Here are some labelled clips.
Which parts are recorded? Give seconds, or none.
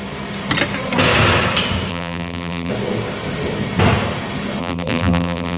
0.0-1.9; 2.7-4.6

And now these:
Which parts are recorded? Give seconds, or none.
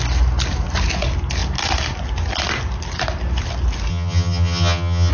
0.0-3.9